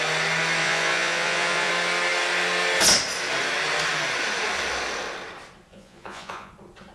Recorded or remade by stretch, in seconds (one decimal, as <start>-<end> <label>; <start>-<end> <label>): 0.0-0.6 recorded; 0.6-1.7 remade; 1.7-5.7 recorded; 5.7-6.5 remade; 6.5-6.9 recorded